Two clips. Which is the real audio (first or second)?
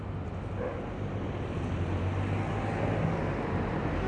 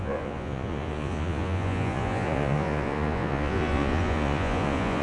first